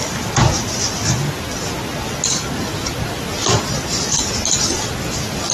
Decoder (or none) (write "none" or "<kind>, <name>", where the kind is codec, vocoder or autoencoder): none